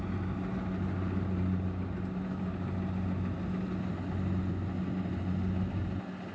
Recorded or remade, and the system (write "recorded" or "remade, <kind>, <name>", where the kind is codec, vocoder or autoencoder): recorded